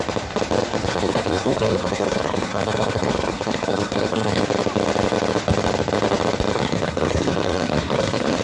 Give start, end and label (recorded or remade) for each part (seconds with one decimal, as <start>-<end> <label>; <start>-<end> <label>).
0.0-0.8 recorded; 0.8-4.4 remade; 4.4-6.5 recorded; 6.5-8.4 remade